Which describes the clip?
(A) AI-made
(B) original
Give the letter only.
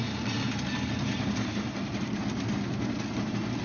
B